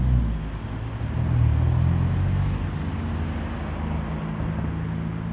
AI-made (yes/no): no